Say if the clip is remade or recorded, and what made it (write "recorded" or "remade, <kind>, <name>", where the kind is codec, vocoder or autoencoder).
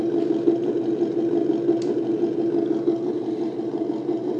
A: remade, vocoder, BigVGAN v2